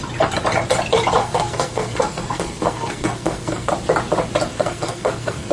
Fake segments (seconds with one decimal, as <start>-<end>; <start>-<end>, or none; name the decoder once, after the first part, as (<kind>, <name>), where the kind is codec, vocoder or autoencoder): 1.2-3.7 (codec, SNAC); 4.5-5.5